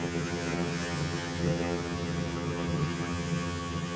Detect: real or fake fake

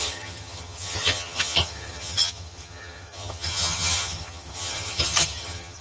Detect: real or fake fake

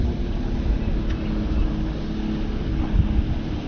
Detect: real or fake real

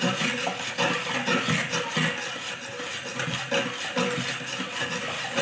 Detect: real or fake real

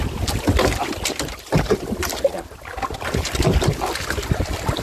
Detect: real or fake real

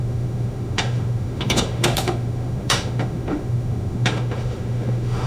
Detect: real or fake fake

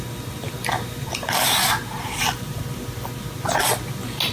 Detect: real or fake real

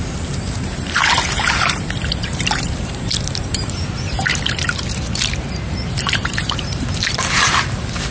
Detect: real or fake fake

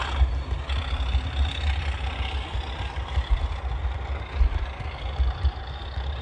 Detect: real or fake real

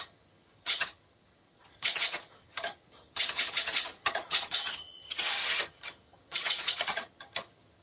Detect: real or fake fake